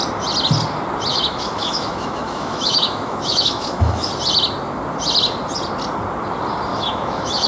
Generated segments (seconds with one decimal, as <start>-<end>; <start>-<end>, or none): 1.1-4.1; 6.7-7.5